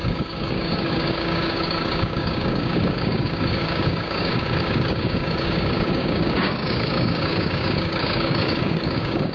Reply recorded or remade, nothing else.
remade